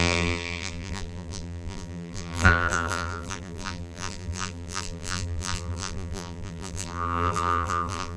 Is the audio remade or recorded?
remade